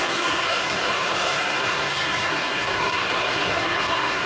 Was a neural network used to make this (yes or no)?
yes